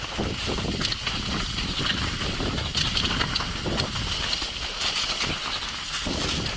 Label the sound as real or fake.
real